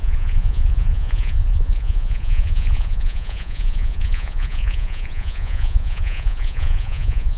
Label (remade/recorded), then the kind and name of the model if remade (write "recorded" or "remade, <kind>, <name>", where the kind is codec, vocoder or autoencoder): remade, vocoder, Vocos